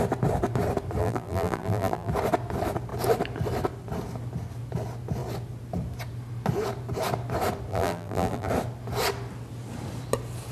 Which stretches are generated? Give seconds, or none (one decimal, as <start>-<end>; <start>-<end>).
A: 1.0-2.1; 7.7-8.5

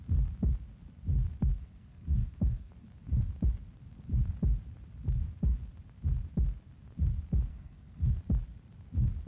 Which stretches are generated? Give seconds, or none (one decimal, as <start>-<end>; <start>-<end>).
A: 1.4-2.7; 7.5-8.2

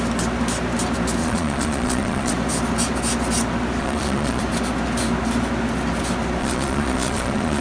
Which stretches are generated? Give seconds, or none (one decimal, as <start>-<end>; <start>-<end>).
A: 1.2-2.3; 3.8-4.4; 6.4-7.6